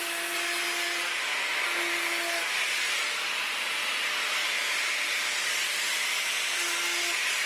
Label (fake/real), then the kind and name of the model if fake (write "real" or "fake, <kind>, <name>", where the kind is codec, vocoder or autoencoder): real